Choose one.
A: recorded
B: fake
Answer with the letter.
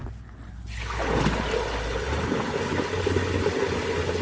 A